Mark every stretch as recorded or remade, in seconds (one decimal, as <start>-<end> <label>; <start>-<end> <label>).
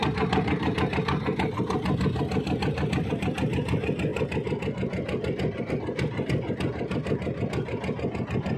0.0-8.6 recorded